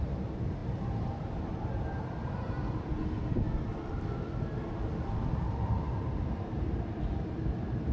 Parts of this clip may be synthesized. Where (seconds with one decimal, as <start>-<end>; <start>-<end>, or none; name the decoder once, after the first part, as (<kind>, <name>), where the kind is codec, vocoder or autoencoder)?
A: 0.0-2.9 (vocoder, BigVGAN v2); 5.2-7.9